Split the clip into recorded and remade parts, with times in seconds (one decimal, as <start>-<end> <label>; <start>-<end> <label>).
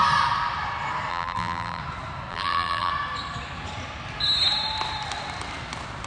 0.0-1.1 recorded; 1.1-1.8 remade; 1.8-2.3 recorded; 2.3-2.9 remade; 2.9-6.1 recorded